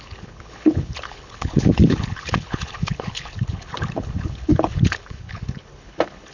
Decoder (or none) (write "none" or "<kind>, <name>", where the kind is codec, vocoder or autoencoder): codec, HILCodec